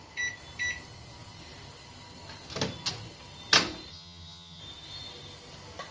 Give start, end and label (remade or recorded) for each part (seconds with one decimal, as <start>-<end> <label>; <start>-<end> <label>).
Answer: 0.0-3.9 recorded; 3.9-4.6 remade; 4.6-5.9 recorded